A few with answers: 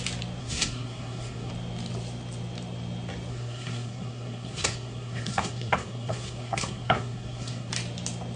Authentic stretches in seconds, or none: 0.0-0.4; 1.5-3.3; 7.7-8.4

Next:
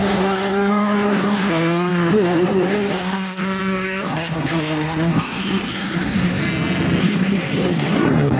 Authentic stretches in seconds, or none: 6.4-7.0

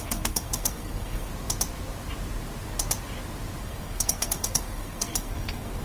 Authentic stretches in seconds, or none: 1.3-3.6

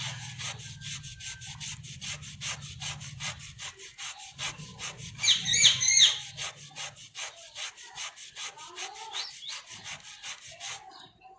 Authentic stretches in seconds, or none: 0.0-11.4

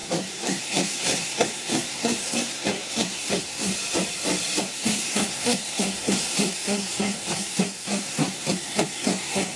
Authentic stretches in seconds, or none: 3.7-4.6

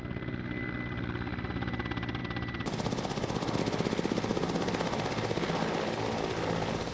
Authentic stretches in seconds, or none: 0.0-6.9

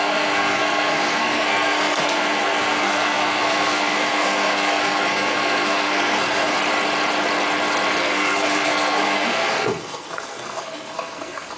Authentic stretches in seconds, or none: 6.5-8.0

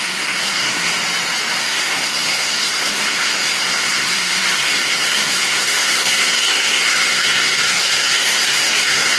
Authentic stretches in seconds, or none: 0.9-1.6